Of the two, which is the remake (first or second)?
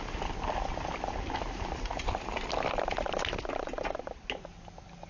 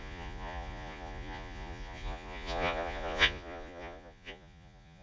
second